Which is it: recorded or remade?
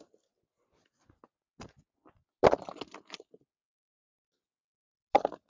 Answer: recorded